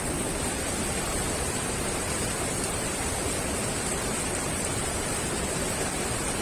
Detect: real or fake real